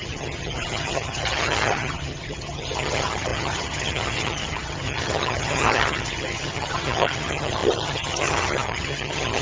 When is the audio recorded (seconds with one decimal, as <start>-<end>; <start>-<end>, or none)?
none